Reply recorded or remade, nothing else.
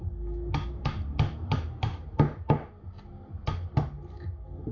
recorded